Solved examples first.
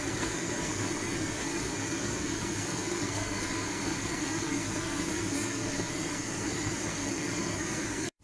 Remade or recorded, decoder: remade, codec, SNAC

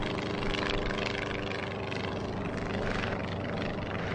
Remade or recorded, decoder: recorded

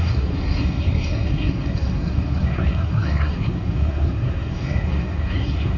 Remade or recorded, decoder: remade, codec, SNAC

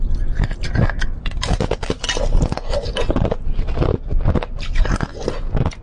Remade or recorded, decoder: recorded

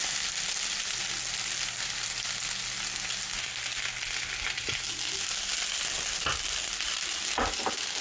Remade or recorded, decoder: recorded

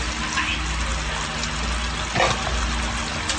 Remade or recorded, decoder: recorded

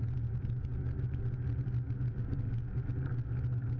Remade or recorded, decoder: recorded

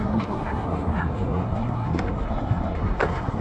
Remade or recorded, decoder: remade, codec, SNAC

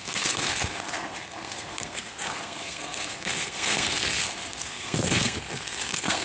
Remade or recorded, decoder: remade, codec, SNAC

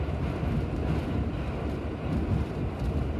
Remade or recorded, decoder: recorded